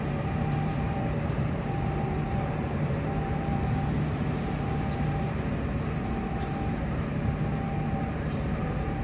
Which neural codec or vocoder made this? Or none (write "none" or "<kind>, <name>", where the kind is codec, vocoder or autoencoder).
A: vocoder, BigVGAN v2